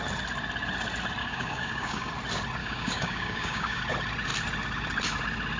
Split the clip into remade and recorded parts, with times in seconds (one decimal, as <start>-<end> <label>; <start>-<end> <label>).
0.0-1.2 recorded; 1.2-2.1 remade; 2.1-2.6 recorded; 2.6-3.8 remade; 3.8-5.6 recorded